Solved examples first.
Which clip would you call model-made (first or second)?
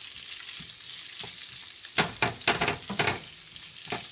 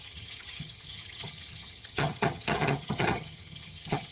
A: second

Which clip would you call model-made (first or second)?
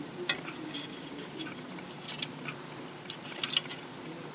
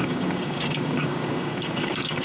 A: second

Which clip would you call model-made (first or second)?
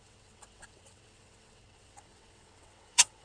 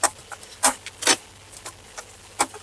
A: first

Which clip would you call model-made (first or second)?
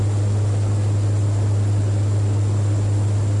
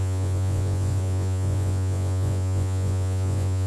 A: second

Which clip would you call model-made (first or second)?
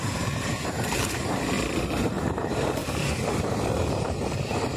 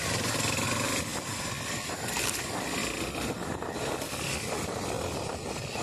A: first